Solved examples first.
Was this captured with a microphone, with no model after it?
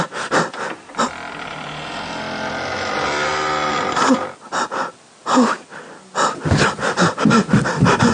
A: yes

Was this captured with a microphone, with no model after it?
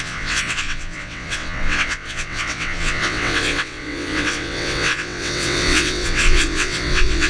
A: no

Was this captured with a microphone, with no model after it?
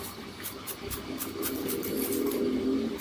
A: no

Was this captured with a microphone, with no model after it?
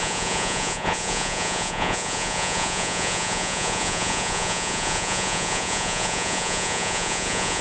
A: no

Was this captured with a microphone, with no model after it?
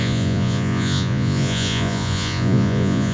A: no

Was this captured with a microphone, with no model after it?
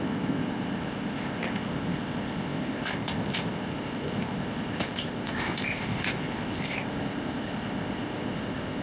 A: no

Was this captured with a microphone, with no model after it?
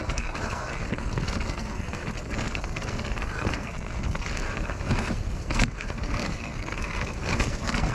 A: no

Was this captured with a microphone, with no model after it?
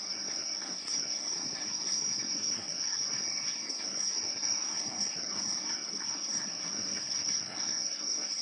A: no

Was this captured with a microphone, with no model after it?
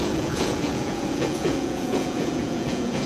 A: no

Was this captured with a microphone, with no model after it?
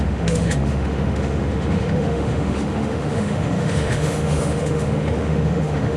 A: no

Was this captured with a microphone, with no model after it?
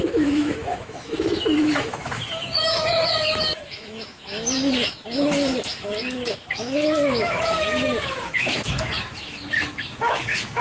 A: no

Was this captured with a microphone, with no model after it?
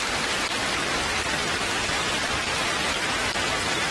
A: no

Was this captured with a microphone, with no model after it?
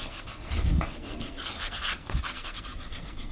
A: no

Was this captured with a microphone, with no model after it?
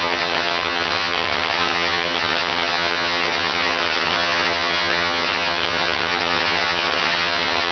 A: no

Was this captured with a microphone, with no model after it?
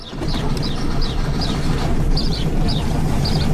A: no